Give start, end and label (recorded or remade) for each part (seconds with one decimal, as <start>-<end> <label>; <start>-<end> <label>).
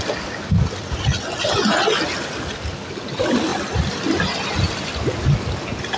0.0-6.0 recorded